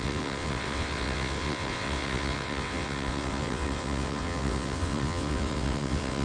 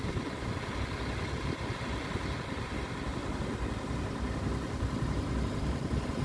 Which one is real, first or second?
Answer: second